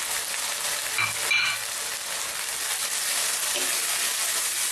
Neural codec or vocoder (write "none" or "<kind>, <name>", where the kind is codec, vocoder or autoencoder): none